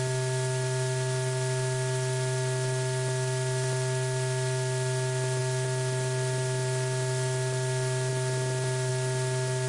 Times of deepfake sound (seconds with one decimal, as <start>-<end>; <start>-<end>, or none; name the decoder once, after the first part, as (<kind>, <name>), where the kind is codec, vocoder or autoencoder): none